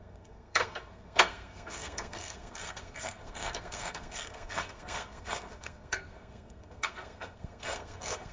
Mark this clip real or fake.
fake